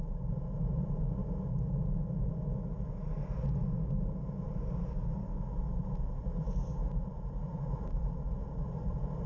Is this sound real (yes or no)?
yes